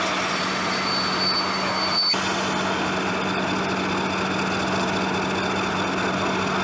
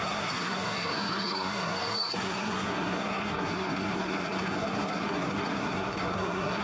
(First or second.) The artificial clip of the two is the second